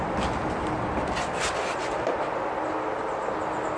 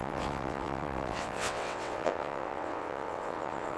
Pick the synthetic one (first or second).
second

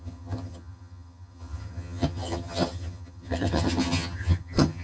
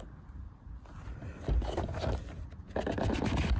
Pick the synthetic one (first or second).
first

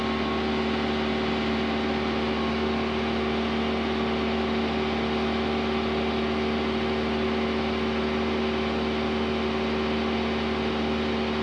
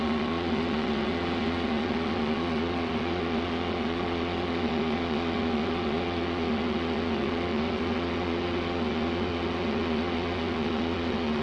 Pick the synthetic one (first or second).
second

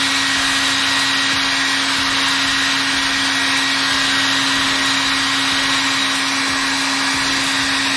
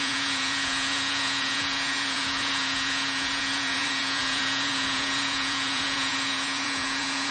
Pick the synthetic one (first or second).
second